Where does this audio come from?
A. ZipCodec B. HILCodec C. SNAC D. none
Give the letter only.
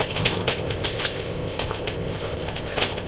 A